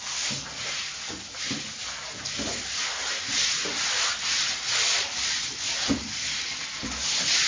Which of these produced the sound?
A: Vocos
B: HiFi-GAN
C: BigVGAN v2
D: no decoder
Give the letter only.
D